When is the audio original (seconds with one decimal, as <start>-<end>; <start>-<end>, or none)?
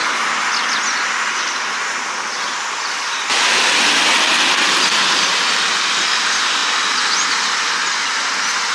0.0-8.7